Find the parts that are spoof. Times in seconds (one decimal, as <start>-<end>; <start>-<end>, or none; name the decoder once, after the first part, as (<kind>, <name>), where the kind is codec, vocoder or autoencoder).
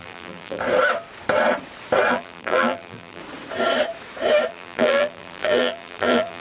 0.0-0.6 (vocoder, BigVGAN v2); 2.1-3.2; 4.5-6.4